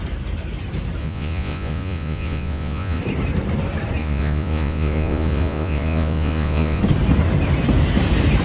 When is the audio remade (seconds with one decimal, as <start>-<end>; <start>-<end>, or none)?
1.0-3.0; 4.0-6.8